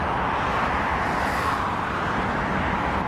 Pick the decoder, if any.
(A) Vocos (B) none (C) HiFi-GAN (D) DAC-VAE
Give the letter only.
B